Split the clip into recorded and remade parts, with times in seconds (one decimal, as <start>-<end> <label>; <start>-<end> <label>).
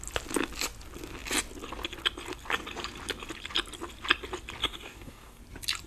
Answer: 0.0-4.6 recorded; 4.6-5.4 remade; 5.4-5.9 recorded